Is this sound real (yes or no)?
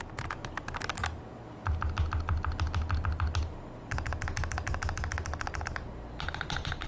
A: yes